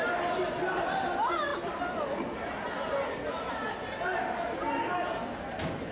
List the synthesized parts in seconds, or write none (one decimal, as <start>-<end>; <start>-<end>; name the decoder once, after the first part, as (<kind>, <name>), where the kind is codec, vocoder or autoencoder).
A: none